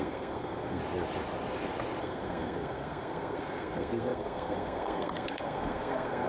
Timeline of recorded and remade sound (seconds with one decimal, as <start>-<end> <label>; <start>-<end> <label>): 0.0-0.8 remade; 0.8-2.0 recorded; 2.0-6.3 remade